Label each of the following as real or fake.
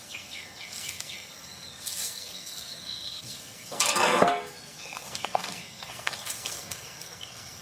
fake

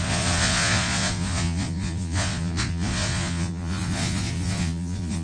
fake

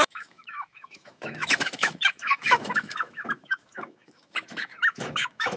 fake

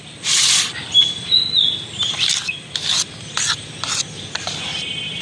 real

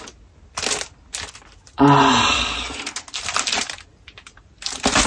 real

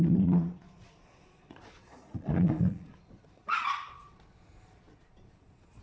fake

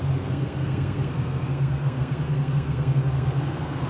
fake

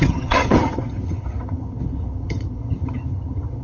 fake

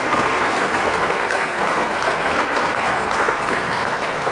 fake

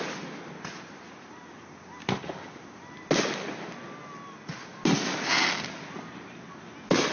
real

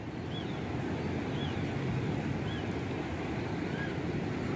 real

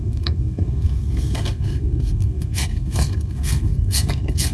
fake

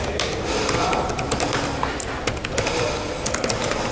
real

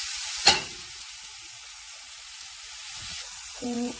fake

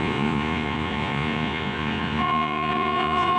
fake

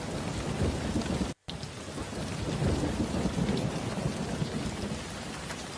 real